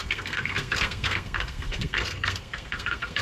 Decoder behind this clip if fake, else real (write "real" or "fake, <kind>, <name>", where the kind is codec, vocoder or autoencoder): fake, codec, SNAC